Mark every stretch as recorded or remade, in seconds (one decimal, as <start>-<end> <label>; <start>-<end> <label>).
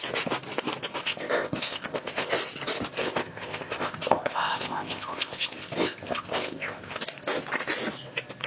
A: 0.0-1.0 recorded; 1.0-2.3 remade; 2.3-3.0 recorded; 3.0-7.0 remade; 7.0-8.5 recorded